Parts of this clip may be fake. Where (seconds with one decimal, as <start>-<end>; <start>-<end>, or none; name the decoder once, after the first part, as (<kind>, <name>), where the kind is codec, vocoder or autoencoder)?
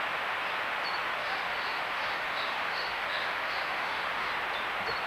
1.2-4.3 (autoencoder, DAC-VAE)